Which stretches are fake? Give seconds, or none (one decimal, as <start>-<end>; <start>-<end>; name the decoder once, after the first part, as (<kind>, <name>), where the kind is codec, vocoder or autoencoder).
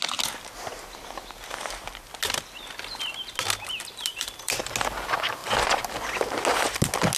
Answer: 4.1-4.6 (vocoder, BigVGAN v2)